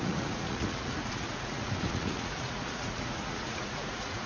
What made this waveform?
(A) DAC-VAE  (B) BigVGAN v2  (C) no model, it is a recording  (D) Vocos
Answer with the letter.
D